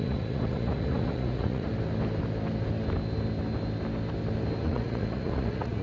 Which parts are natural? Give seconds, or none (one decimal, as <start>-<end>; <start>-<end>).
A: 1.7-4.6